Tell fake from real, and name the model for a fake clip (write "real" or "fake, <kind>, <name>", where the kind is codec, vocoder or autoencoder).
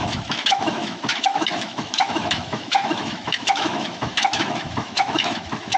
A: fake, autoencoder, DAC-VAE